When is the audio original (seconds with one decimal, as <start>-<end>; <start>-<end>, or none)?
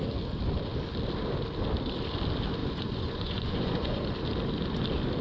0.0-2.6; 4.0-5.2